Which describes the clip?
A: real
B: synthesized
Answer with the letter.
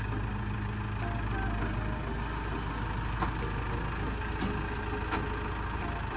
A